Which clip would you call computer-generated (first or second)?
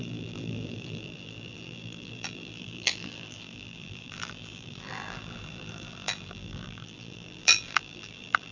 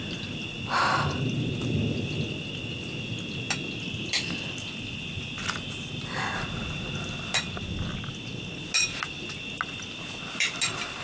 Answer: first